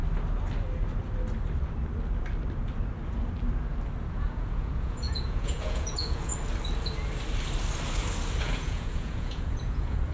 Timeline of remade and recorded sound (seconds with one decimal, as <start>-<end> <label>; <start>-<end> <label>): 0.0-4.1 recorded; 4.1-6.3 remade; 6.3-8.4 recorded; 8.4-10.1 remade